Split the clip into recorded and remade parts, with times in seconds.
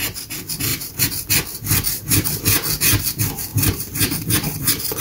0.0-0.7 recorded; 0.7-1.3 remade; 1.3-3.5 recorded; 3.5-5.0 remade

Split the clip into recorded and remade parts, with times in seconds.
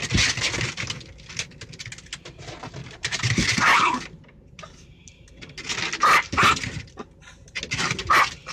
0.0-2.8 recorded; 2.8-5.1 remade; 5.1-8.5 recorded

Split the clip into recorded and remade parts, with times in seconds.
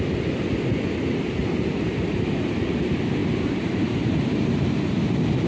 0.0-1.4 recorded; 1.4-2.8 remade; 2.8-3.2 recorded; 3.2-4.9 remade; 4.9-5.5 recorded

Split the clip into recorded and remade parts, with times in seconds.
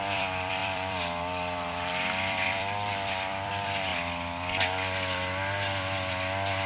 0.0-3.9 remade; 3.9-6.1 recorded; 6.1-6.7 remade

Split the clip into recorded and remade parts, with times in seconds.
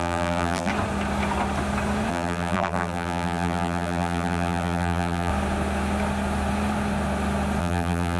0.0-0.7 remade; 0.7-2.1 recorded; 2.1-5.3 remade; 5.3-7.6 recorded; 7.6-8.2 remade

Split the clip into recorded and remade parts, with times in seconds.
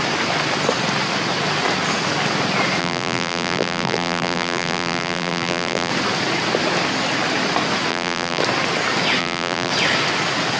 0.0-2.8 recorded; 2.8-5.9 remade; 5.9-7.9 recorded; 7.9-8.4 remade; 8.4-9.2 recorded; 9.2-9.7 remade; 9.7-10.6 recorded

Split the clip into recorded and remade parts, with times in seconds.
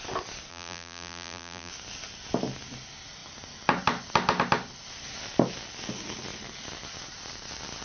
0.0-0.5 recorded; 0.5-1.7 remade; 1.7-7.8 recorded